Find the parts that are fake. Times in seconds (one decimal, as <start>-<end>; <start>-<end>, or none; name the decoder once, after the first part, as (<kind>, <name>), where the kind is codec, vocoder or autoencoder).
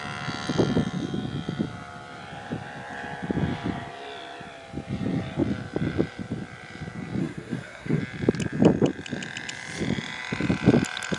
7.2-8.0 (codec, SNAC)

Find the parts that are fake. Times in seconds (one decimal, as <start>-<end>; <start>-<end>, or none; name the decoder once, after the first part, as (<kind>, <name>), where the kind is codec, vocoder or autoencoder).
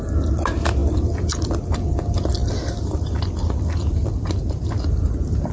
none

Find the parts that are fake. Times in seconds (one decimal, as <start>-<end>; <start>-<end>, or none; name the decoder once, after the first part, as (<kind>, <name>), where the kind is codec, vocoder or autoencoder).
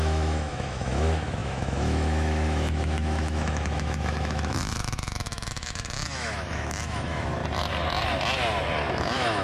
0.0-7.4 (autoencoder, DAC-VAE); 8.9-9.4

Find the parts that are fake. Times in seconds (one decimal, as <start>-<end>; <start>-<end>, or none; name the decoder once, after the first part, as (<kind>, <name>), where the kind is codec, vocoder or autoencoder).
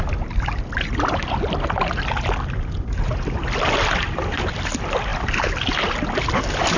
none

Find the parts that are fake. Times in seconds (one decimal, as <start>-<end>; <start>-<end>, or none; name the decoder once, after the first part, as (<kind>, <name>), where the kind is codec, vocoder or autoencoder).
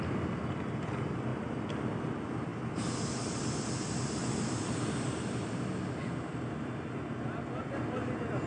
none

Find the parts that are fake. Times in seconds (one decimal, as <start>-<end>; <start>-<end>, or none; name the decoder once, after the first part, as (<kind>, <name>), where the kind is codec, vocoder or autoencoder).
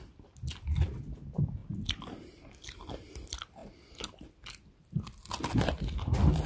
none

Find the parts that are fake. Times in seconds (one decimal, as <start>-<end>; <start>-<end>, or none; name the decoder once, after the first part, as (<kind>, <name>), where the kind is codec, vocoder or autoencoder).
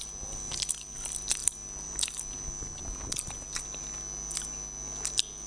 none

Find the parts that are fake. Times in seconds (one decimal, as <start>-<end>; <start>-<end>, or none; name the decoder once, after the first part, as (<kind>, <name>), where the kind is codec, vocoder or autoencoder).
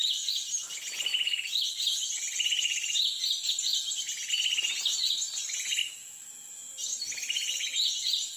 5.8-6.5 (autoencoder, DAC-VAE)